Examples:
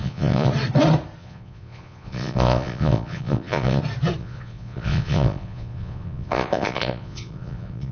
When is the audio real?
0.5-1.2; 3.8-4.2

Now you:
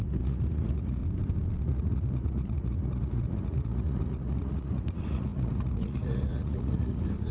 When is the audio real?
1.0-1.6

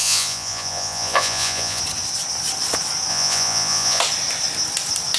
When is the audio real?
1.8-3.1; 4.0-5.2

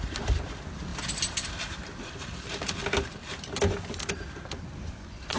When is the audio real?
0.0-4.8

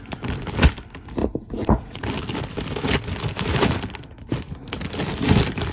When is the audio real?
0.0-1.2; 2.0-5.7

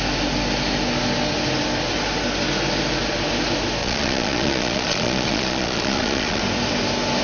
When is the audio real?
0.0-3.8; 6.4-7.2